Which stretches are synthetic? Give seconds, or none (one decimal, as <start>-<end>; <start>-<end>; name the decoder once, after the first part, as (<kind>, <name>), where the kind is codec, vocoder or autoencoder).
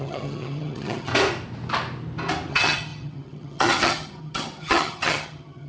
0.0-1.1 (vocoder, HiFi-GAN); 2.5-5.7